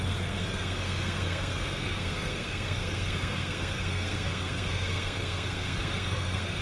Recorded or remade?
remade